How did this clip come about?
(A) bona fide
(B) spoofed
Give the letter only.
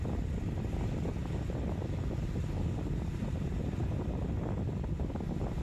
A